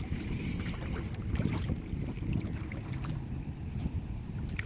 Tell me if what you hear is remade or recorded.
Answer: recorded